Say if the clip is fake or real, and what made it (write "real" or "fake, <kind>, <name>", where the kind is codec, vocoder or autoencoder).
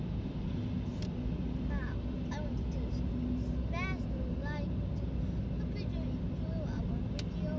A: real